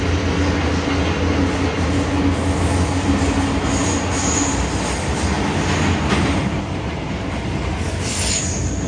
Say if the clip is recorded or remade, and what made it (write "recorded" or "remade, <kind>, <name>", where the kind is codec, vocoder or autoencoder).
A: recorded